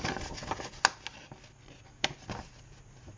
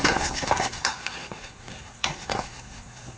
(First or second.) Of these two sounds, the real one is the first